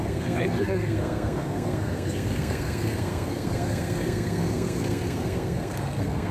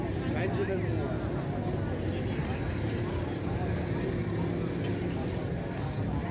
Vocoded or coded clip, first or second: first